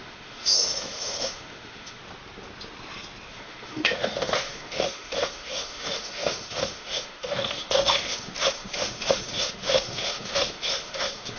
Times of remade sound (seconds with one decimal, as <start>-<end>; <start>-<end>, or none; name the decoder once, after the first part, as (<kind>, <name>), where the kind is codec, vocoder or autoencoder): 0.0-2.0 (autoencoder, DAC-VAE); 3.3-11.4